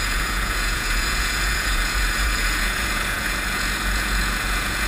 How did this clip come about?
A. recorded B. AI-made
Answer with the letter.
B